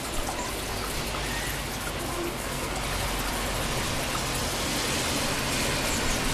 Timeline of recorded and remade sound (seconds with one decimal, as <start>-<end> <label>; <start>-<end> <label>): 0.0-2.3 recorded; 2.3-2.8 remade; 2.8-6.3 recorded